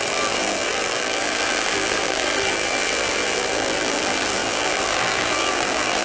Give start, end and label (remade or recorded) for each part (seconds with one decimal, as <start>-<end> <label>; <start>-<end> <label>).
0.0-6.0 remade